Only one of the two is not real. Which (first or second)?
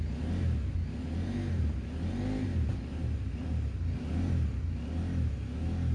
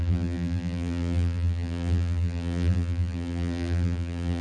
second